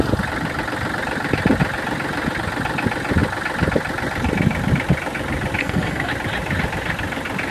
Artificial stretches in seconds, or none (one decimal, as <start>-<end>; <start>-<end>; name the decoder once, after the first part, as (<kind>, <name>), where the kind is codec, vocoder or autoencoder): 5.6-6.1 (codec, SNAC)